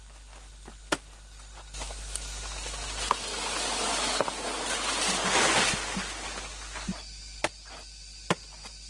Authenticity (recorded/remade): recorded